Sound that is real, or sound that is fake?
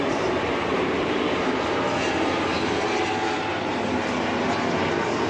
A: fake